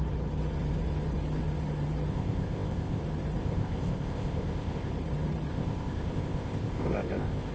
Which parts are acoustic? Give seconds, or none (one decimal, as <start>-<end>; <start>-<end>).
0.0-2.1; 3.0-3.4; 4.9-5.5